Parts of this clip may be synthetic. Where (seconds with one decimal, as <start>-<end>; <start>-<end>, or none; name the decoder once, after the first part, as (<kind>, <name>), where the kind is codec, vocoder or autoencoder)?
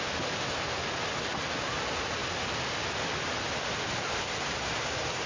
none